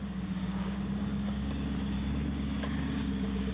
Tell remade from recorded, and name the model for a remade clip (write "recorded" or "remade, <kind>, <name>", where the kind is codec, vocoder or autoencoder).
remade, codec, DAC